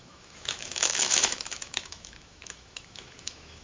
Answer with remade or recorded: remade